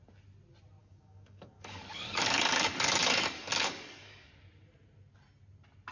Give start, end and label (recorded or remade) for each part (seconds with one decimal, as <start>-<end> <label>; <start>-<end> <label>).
0.0-0.8 recorded; 0.8-4.3 remade; 4.3-5.9 recorded